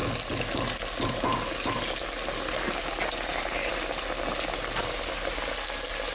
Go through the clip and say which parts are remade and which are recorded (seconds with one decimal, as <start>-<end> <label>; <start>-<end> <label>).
0.0-6.1 recorded